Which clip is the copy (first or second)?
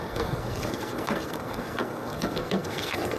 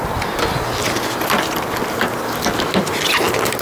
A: first